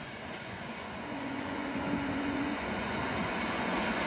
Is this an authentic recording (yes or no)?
no